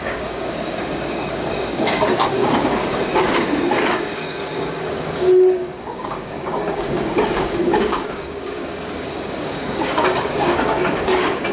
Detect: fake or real fake